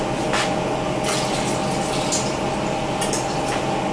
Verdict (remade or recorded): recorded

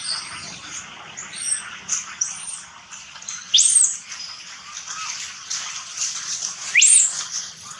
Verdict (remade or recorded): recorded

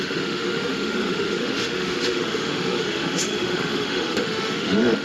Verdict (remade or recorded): remade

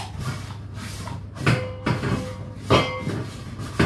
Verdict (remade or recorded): recorded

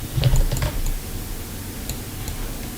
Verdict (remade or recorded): recorded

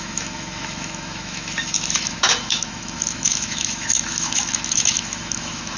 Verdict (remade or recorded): remade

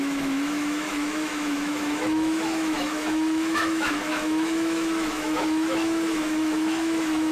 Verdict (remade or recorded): remade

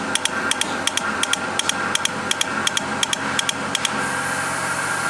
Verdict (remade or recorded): recorded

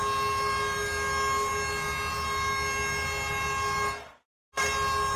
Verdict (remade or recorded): recorded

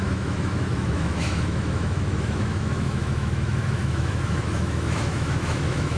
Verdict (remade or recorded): remade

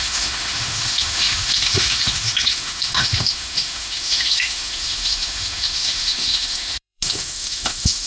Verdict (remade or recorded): remade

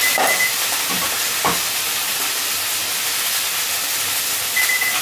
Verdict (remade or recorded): recorded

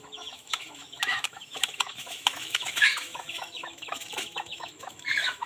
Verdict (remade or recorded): remade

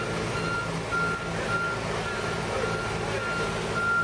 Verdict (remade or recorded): recorded